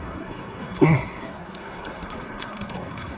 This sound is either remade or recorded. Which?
remade